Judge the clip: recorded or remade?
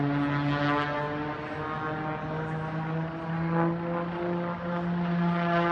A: recorded